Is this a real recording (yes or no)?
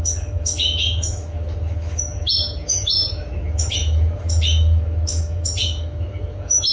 no